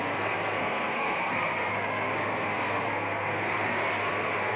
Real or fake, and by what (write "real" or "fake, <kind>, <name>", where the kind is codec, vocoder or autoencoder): fake, codec, SNAC